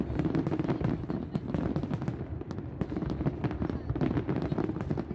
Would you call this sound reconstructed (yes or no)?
no